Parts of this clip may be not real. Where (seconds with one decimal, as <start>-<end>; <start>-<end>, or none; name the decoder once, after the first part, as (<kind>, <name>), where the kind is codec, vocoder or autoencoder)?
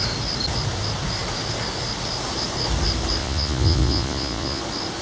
3.2-4.6 (vocoder, Vocos)